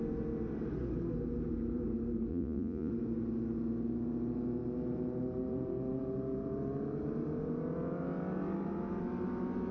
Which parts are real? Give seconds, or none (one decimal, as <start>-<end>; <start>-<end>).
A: 0.0-2.3; 2.9-9.7